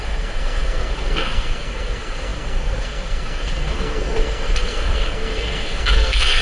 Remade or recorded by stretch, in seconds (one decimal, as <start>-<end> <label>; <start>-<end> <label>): 0.0-6.4 remade

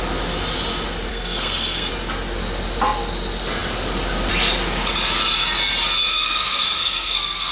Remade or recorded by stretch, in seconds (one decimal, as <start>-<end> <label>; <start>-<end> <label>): 0.0-1.1 recorded; 1.1-1.9 remade; 1.9-6.1 recorded; 6.1-7.5 remade

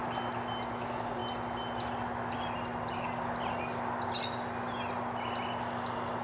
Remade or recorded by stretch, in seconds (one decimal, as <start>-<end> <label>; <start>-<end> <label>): 0.0-6.2 recorded

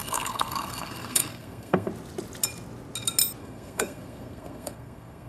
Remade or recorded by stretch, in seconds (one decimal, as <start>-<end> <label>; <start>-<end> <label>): 0.0-1.9 remade; 1.9-3.4 recorded; 3.4-5.3 remade